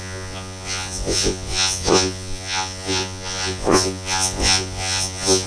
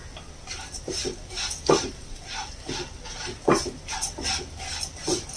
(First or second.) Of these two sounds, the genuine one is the second